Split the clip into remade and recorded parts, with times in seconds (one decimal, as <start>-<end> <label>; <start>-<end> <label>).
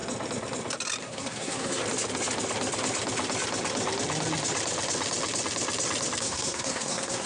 0.0-1.0 recorded; 1.0-1.8 remade; 1.8-6.2 recorded; 6.2-7.3 remade